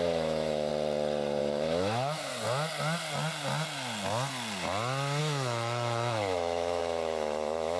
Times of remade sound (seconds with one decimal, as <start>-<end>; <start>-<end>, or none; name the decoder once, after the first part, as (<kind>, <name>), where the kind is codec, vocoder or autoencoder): 0.0-0.7 (autoencoder, DAC-VAE); 1.4-2.3; 5.2-7.8